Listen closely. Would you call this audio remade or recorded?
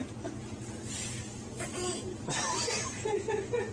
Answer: remade